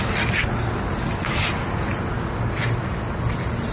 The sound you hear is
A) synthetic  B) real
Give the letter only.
B